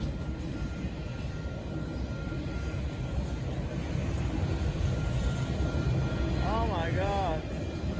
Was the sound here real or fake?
real